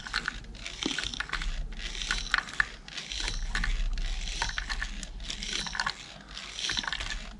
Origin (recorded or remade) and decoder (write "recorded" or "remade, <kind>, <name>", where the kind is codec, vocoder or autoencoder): recorded